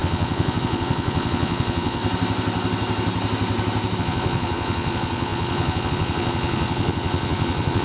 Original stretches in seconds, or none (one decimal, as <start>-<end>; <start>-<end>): 2.0-4.0